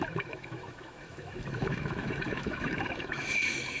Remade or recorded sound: remade